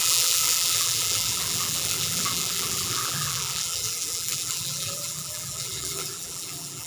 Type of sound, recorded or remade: remade